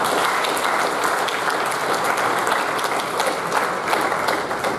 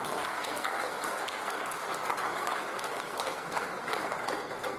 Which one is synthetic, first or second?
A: second